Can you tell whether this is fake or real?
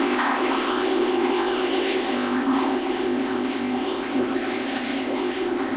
fake